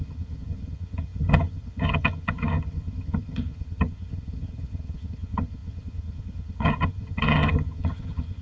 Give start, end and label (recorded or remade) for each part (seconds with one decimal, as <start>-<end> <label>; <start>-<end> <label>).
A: 0.0-8.4 remade